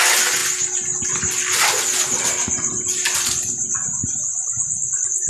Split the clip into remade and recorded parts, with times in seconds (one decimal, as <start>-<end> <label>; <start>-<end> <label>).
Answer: 0.0-5.3 recorded